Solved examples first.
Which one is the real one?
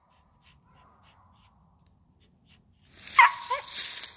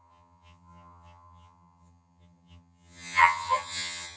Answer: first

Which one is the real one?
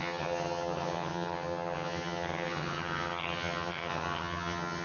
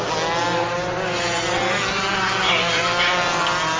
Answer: second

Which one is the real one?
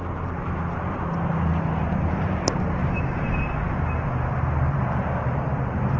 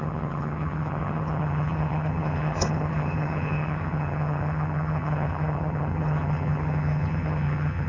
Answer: first